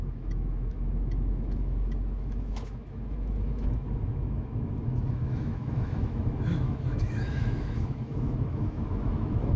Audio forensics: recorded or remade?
remade